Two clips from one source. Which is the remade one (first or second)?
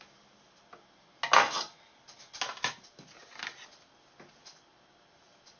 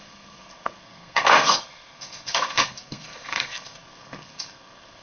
second